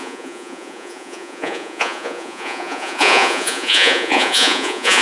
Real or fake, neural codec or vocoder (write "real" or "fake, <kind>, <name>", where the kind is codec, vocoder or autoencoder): fake, vocoder, Vocos